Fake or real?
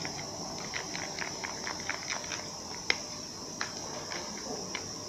real